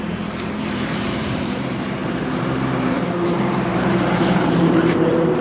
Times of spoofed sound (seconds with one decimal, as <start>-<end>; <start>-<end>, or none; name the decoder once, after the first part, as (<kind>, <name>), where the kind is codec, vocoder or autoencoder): 0.0-5.4 (vocoder, BigVGAN v2)